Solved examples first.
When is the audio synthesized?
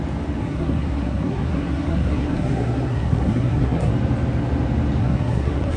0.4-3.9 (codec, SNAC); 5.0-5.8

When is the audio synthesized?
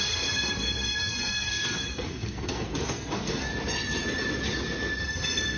0.0-3.5 (codec, SNAC); 5.0-5.6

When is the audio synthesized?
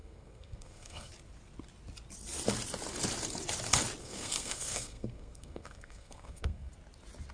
0.0-1.1 (codec, SNAC); 4.0-6.7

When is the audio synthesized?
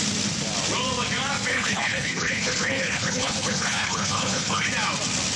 1.5-4.7 (codec, HILCodec)